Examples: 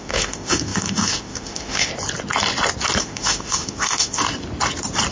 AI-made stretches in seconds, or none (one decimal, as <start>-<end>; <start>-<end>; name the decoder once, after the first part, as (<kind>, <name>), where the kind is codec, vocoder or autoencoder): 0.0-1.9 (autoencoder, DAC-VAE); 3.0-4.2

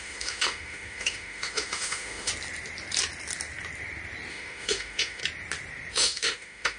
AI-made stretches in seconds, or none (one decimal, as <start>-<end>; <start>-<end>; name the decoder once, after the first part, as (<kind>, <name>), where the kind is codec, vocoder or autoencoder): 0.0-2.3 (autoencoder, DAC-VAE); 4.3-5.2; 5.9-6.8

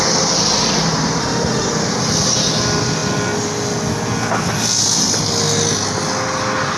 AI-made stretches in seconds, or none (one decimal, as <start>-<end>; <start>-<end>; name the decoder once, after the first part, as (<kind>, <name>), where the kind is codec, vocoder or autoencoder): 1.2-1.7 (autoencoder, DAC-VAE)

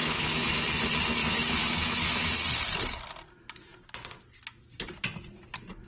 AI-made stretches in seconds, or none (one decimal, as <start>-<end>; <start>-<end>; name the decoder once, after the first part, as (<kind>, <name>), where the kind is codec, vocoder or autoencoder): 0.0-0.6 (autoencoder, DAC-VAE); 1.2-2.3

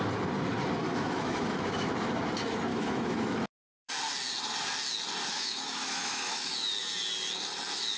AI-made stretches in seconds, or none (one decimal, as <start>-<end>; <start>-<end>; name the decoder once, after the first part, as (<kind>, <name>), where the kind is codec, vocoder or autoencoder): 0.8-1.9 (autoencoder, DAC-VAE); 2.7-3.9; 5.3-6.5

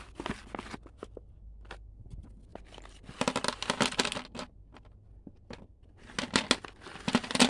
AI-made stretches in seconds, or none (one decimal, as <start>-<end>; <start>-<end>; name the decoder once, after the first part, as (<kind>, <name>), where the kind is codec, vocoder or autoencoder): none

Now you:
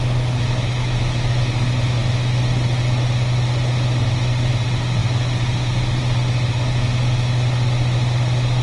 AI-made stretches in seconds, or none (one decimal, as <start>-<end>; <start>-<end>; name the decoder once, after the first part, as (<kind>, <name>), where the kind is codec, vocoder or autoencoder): 0.8-1.4 (autoencoder, DAC-VAE)